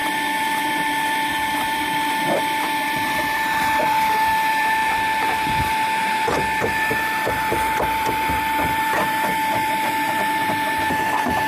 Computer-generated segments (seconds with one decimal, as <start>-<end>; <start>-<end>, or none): 0.0-11.5